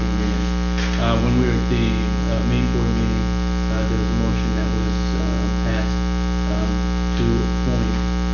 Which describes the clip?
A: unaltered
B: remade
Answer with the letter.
A